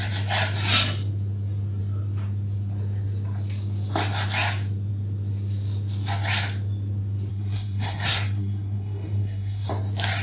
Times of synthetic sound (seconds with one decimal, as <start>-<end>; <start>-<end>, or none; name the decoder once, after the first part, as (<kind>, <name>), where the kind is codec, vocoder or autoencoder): 7.3-9.7 (codec, SNAC)